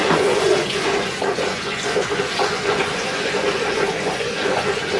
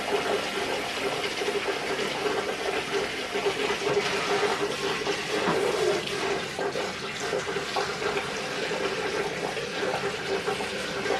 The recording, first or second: second